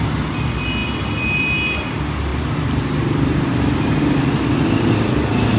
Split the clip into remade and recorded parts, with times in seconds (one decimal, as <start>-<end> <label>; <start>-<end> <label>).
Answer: 0.0-2.3 recorded; 2.3-4.0 remade; 4.0-5.6 recorded